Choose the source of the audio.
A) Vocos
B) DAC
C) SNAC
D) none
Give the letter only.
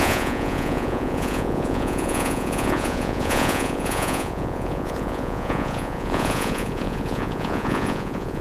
A